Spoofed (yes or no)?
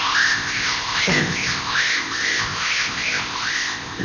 yes